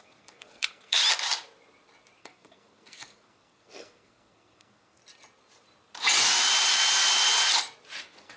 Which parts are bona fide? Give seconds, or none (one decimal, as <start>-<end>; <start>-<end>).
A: 1.0-2.2; 5.0-8.0